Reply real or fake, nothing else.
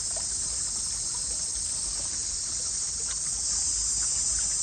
real